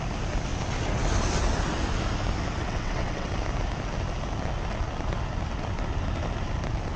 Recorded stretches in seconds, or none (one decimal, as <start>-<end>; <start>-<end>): 0.0-2.6; 3.3-7.0